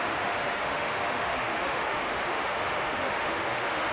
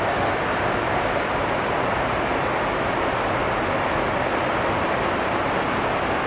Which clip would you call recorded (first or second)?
second